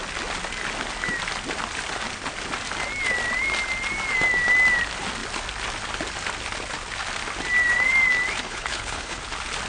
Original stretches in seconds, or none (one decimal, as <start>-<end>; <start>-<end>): 0.0-8.4; 9.2-9.7